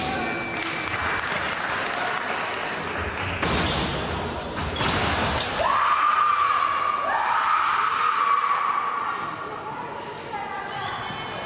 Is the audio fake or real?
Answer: real